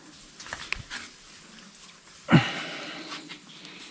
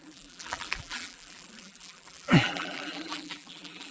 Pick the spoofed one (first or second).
second